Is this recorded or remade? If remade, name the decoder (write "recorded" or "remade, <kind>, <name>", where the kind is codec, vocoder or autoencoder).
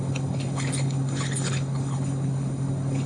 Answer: remade, codec, HILCodec